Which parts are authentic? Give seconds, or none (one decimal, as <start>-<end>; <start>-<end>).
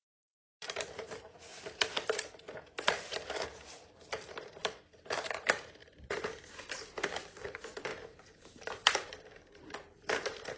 1.5-2.2; 4.6-5.2